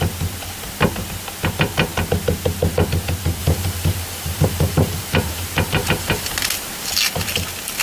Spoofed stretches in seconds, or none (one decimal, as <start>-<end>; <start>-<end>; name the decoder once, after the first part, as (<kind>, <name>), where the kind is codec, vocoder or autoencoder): 3.4-6.5 (vocoder, BigVGAN v2)